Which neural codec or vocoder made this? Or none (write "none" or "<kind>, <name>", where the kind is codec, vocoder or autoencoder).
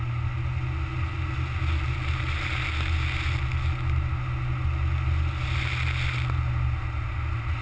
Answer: none